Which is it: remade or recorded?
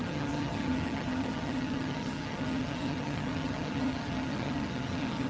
remade